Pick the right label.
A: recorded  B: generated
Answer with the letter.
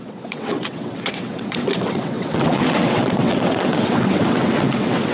B